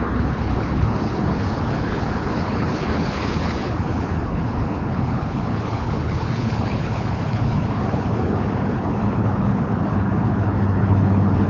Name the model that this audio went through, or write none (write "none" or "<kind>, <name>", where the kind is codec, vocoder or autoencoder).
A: codec, HILCodec